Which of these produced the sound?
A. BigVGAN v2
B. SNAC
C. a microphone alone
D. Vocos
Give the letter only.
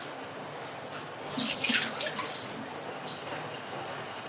C